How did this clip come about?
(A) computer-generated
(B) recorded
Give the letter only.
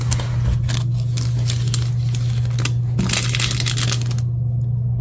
B